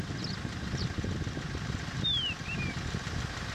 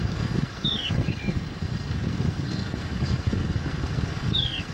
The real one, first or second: first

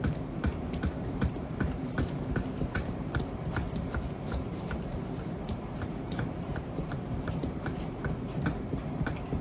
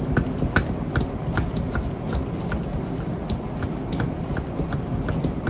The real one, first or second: second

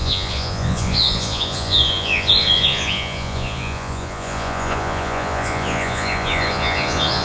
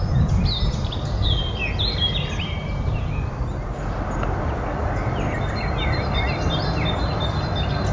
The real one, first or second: second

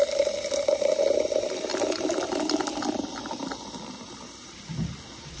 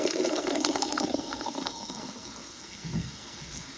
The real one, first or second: first